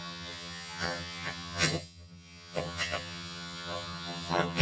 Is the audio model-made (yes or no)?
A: yes